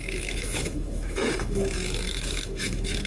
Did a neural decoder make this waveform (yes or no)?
yes